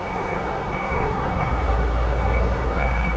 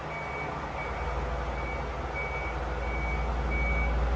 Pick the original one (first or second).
second